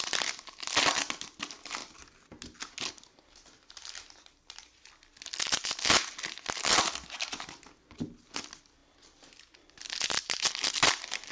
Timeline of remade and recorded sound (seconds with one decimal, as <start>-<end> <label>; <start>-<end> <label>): 0.0-11.3 recorded